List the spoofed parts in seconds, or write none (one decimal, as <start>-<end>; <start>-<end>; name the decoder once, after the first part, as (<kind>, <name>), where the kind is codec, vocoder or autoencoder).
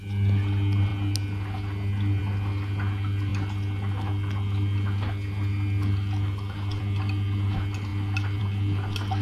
none